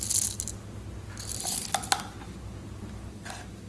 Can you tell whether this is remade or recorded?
recorded